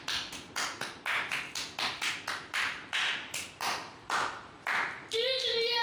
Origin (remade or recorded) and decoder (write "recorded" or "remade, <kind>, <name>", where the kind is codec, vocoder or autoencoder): remade, vocoder, BigVGAN v2